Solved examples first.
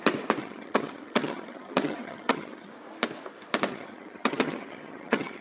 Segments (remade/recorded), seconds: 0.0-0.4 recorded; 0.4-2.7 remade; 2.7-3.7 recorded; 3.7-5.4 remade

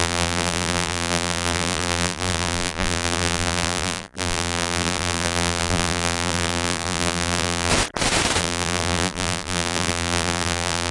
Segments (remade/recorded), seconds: 0.0-7.7 remade; 7.7-8.4 recorded; 8.4-10.9 remade

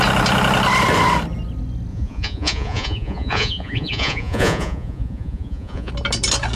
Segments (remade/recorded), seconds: 0.0-1.9 recorded; 1.9-5.9 remade; 5.9-6.6 recorded

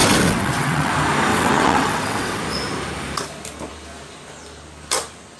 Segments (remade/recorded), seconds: 0.0-0.9 remade; 0.9-1.3 recorded; 1.3-2.4 remade; 2.4-5.4 recorded

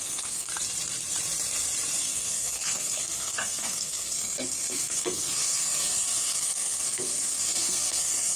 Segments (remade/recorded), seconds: 0.0-0.5 remade; 0.5-2.0 recorded; 2.0-8.4 remade

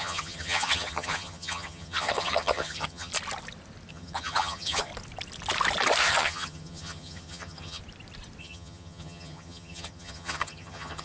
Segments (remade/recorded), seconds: 0.0-3.1 remade; 3.1-3.9 recorded; 3.9-4.9 remade; 4.9-6.0 recorded; 6.0-7.8 remade; 7.8-8.4 recorded; 8.4-11.0 remade

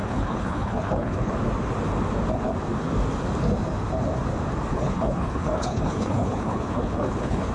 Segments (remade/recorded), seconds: 0.0-1.3 remade; 1.3-4.7 recorded; 4.7-7.5 remade